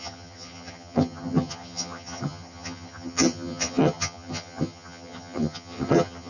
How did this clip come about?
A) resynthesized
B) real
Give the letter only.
A